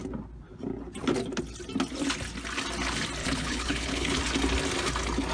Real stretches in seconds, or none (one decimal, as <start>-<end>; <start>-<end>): 0.0-3.2; 4.2-5.3